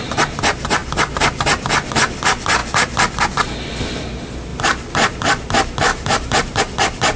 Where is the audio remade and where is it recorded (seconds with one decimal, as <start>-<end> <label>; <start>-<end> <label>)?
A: 0.0-4.5 recorded; 4.5-5.2 remade; 5.2-5.9 recorded; 5.9-6.6 remade; 6.6-7.2 recorded